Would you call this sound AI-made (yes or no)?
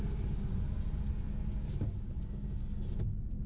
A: no